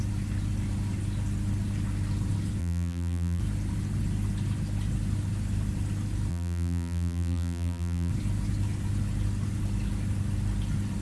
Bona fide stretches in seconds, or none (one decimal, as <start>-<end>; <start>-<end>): 0.0-2.6; 3.4-6.3; 8.1-11.0